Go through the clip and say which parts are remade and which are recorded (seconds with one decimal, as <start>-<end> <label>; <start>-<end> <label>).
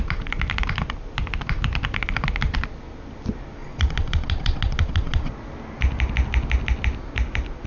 0.0-3.6 recorded; 3.6-5.3 remade; 5.3-7.7 recorded